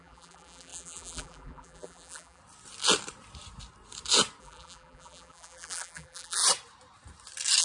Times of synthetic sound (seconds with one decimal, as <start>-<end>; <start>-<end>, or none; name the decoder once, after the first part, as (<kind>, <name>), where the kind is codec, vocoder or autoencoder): 0.0-2.4 (vocoder, BigVGAN v2); 4.4-6.4